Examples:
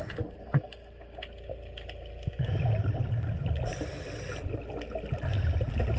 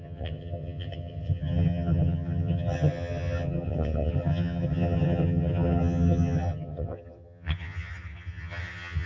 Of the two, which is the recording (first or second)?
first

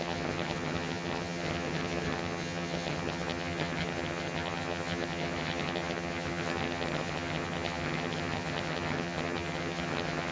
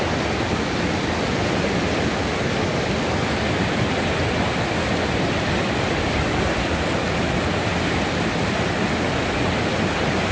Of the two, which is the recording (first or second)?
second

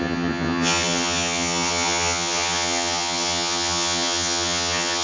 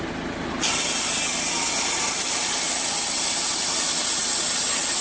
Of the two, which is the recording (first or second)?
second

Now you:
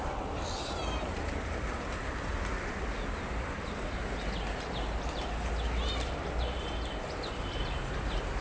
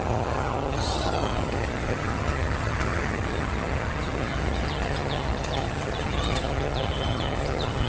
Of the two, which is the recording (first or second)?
first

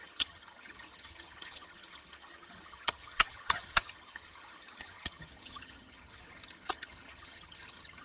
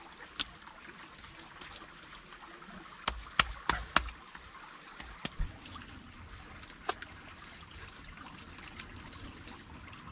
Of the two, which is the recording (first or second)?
second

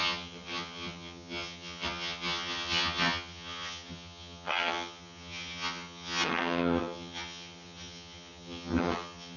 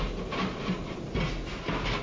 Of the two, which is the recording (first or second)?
second